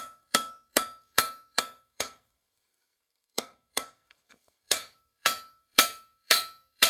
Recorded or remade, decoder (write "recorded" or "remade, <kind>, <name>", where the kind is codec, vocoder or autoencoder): remade, codec, SNAC